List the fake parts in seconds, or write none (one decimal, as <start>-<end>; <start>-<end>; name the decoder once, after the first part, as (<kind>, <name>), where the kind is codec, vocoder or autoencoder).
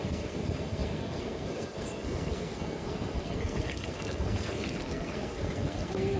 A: 0.0-6.2 (codec, SNAC)